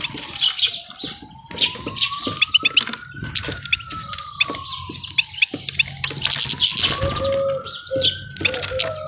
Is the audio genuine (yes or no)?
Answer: yes